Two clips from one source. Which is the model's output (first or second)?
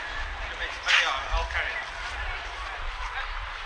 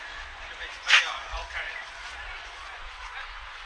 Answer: second